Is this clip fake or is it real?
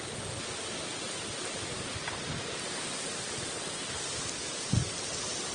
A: real